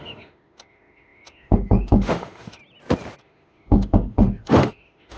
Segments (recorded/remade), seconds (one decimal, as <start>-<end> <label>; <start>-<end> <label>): 0.0-2.6 remade; 2.6-3.2 recorded; 3.2-5.2 remade